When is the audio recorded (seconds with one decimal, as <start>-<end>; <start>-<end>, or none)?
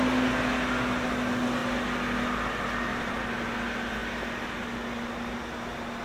0.0-2.9; 3.5-6.0